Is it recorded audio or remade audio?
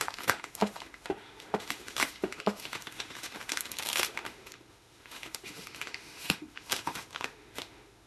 remade